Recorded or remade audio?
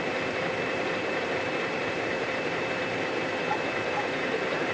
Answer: remade